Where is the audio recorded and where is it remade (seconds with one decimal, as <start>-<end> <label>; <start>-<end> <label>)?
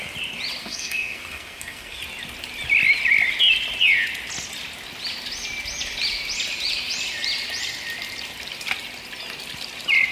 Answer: 0.0-0.6 recorded; 0.6-2.0 remade; 2.0-10.1 recorded